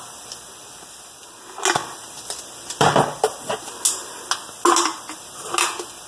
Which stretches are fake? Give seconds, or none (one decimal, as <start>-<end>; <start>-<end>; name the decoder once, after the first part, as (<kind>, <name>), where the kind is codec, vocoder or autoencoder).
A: 1.8-3.6 (vocoder, BigVGAN v2)

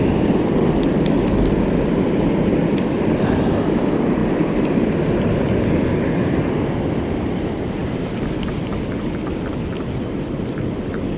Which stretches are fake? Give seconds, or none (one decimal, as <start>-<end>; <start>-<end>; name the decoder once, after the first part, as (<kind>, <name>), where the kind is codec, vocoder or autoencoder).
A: none

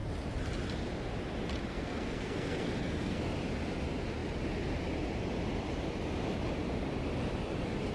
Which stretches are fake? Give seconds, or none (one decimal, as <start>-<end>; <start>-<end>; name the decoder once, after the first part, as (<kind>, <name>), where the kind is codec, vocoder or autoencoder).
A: 1.7-3.2 (codec, SNAC)